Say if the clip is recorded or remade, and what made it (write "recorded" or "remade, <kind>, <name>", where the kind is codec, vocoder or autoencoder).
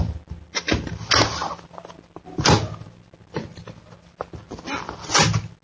recorded